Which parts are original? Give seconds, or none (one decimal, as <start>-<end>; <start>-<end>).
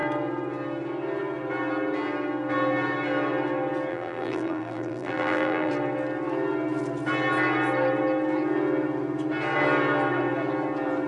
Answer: 0.0-3.9; 5.7-11.1